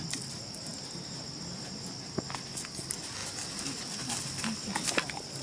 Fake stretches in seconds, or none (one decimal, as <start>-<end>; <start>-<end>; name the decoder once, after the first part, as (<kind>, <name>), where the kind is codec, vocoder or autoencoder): none